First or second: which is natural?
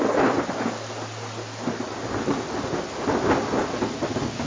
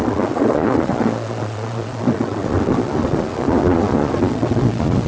first